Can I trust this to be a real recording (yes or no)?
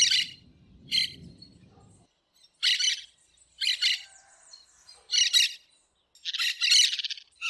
yes